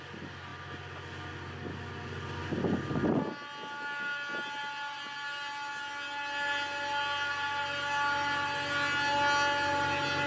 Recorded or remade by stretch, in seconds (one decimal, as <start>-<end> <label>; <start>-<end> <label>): 0.0-10.3 recorded